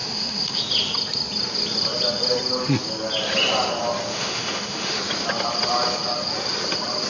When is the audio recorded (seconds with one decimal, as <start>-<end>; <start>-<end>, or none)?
0.6-4.1; 5.0-7.1